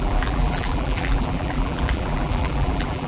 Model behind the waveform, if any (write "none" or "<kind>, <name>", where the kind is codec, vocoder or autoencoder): vocoder, BigVGAN v2